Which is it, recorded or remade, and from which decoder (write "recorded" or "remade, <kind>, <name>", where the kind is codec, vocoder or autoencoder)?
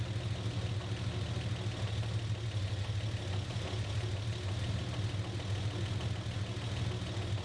recorded